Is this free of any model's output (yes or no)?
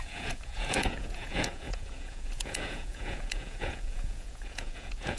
no